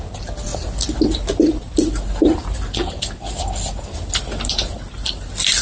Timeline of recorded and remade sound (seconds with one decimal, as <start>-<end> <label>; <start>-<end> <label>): 0.0-5.6 recorded